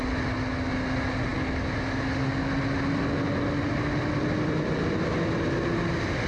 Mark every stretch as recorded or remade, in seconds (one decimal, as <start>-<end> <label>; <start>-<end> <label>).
0.0-6.3 recorded